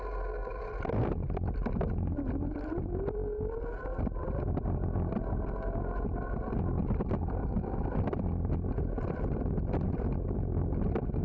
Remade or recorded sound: recorded